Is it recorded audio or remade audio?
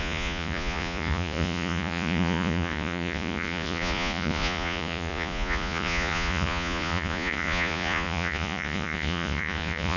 remade